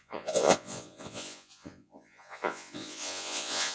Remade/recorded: remade